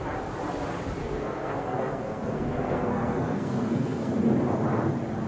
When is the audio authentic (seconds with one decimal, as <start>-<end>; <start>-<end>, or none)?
0.0-1.0; 4.2-5.3